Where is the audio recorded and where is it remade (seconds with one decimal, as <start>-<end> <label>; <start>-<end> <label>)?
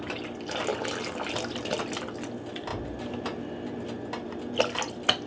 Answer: 0.0-5.3 recorded